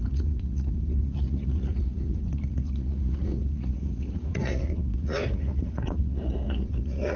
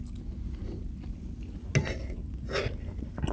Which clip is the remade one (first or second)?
first